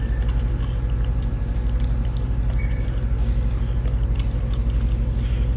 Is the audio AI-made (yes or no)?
no